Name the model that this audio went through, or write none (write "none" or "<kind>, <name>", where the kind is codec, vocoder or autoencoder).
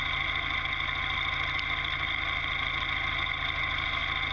none